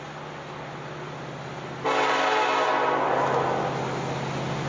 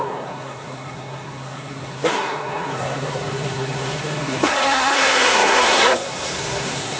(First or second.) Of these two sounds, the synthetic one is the second